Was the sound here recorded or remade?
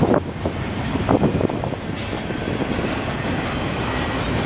recorded